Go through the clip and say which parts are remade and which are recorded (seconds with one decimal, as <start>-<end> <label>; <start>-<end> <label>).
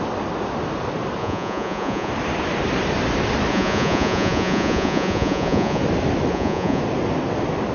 0.0-1.2 recorded; 1.2-2.1 remade; 2.1-3.5 recorded; 3.5-5.8 remade; 5.8-6.3 recorded; 6.3-6.8 remade; 6.8-7.7 recorded